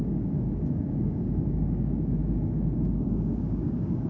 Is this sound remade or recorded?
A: remade